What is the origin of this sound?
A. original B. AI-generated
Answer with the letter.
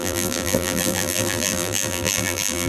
B